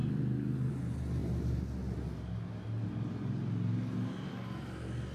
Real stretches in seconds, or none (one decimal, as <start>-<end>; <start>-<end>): 0.0-5.1